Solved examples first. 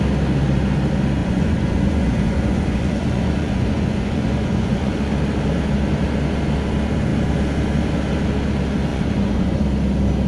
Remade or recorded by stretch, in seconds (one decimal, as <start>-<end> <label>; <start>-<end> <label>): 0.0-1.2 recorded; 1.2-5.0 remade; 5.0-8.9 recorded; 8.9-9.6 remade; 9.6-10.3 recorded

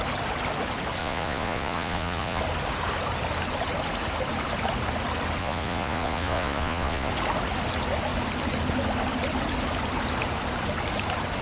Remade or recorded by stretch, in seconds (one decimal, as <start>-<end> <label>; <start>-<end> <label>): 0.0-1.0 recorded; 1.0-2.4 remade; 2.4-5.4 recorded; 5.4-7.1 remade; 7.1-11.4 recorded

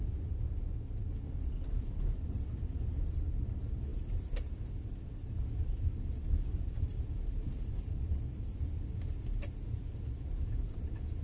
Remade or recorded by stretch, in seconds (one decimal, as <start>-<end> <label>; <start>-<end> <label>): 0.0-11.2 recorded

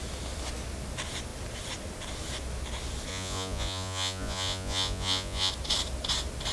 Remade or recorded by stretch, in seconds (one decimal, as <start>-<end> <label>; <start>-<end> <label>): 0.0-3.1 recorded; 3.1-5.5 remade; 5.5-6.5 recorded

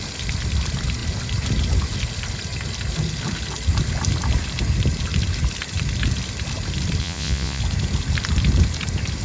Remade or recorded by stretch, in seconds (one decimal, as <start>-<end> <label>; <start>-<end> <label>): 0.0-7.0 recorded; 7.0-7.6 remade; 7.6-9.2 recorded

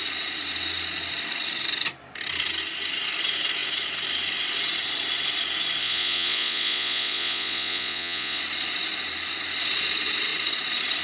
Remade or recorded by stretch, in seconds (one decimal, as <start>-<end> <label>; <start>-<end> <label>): 0.0-5.8 recorded; 5.8-8.4 remade; 8.4-11.0 recorded